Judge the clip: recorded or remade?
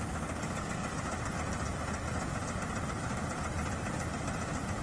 recorded